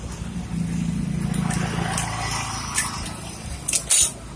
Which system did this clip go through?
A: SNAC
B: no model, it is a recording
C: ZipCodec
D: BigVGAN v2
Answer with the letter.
B